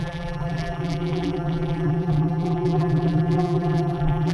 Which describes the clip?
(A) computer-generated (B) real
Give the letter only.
A